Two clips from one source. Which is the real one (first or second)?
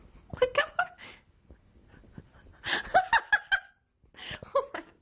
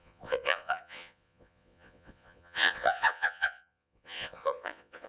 first